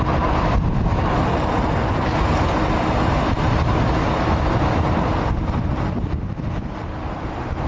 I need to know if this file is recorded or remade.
recorded